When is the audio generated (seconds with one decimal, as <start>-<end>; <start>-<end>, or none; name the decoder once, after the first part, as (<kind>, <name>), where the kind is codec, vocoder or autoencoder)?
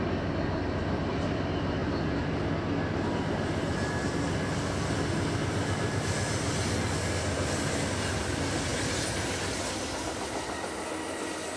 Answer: none